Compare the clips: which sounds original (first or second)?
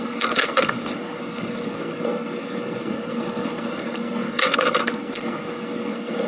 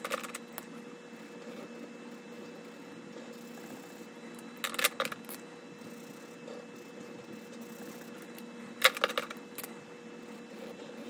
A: second